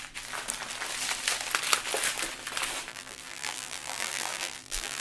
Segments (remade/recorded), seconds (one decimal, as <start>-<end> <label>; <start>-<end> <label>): 0.0-2.9 recorded; 2.9-5.0 remade